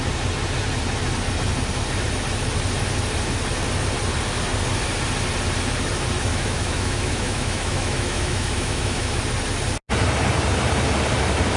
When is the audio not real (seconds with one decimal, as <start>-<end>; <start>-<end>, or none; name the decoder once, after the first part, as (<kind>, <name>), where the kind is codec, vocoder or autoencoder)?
6.3-9.2 (autoencoder, DAC-VAE)